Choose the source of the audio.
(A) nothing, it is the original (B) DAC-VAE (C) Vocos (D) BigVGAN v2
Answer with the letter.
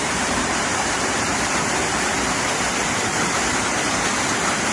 D